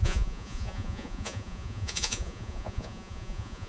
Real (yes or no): no